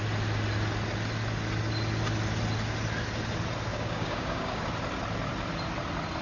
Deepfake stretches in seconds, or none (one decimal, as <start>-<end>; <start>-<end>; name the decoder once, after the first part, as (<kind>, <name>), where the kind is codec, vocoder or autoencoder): 3.7-4.6 (codec, DAC)